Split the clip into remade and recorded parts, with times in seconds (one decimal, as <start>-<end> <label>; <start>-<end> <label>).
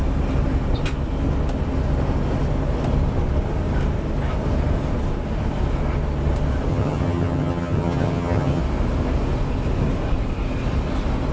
0.0-6.7 recorded; 6.7-8.6 remade; 8.6-11.3 recorded